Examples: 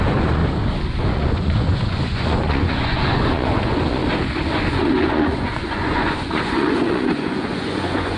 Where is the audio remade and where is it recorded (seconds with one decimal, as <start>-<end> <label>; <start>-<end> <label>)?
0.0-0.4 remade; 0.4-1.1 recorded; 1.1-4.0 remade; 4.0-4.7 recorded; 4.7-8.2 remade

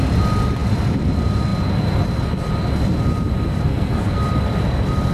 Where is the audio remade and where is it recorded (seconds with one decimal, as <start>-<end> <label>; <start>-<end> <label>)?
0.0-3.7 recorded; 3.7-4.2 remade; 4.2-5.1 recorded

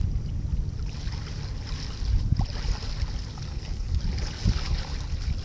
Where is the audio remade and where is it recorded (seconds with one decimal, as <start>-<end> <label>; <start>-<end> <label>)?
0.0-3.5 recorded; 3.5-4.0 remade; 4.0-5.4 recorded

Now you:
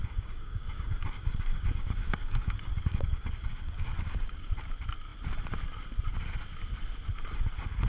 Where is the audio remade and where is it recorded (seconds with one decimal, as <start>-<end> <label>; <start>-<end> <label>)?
0.0-4.5 remade; 4.5-7.9 recorded

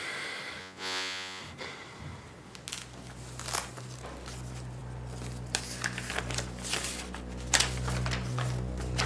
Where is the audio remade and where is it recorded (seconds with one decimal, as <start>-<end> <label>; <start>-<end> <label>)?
0.0-0.6 recorded; 0.6-1.4 remade; 1.4-9.1 recorded